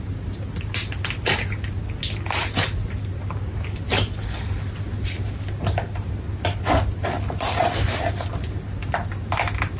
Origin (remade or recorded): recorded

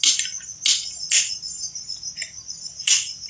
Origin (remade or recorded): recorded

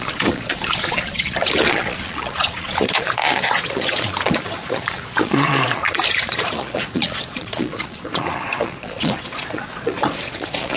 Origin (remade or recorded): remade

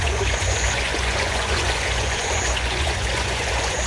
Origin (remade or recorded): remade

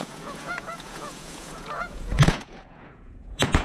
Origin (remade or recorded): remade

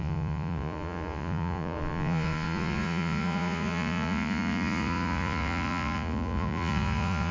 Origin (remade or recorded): remade